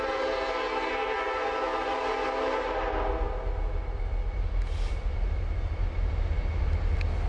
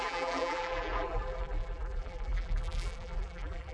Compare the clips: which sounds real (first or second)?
first